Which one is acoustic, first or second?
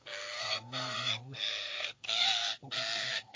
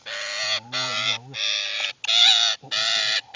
second